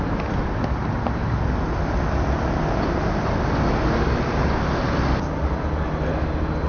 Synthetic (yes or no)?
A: no